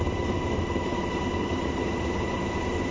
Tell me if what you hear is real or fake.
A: fake